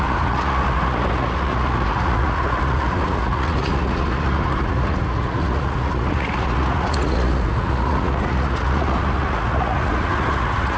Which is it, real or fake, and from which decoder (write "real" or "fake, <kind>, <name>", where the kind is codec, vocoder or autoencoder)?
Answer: fake, vocoder, Vocos